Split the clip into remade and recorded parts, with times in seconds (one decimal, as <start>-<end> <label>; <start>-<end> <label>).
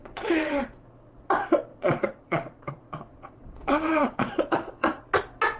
0.0-0.6 remade; 0.6-1.7 recorded; 1.7-2.7 remade; 2.7-3.1 recorded; 3.1-5.0 remade; 5.0-5.6 recorded